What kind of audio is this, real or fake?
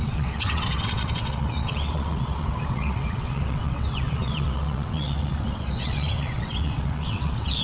fake